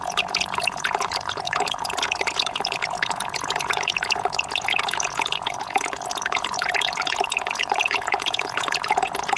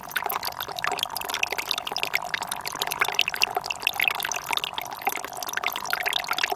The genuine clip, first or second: second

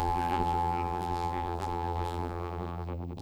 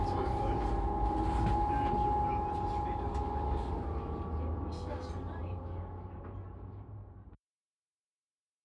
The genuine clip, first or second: second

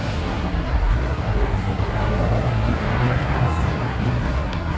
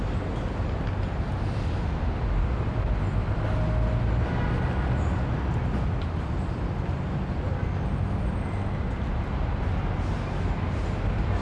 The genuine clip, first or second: second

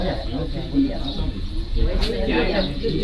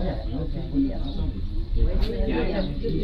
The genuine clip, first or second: second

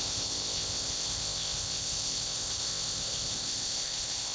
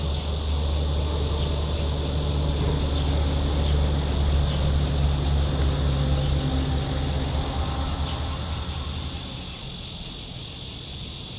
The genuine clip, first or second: second